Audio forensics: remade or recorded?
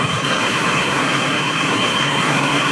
remade